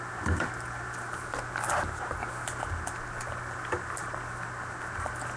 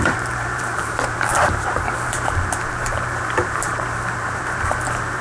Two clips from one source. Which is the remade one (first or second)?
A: second